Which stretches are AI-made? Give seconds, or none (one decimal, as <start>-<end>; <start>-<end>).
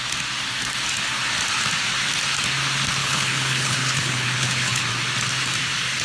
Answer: 3.0-4.8